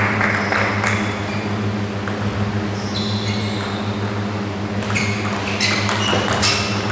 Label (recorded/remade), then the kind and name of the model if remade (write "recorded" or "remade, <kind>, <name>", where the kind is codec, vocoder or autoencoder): recorded